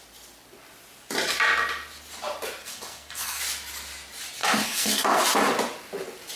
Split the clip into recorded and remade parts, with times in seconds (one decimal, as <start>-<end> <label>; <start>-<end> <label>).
0.0-2.6 recorded; 2.6-3.4 remade; 3.4-4.4 recorded; 4.4-5.2 remade; 5.2-6.4 recorded